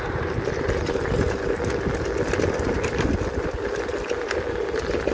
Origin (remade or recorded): recorded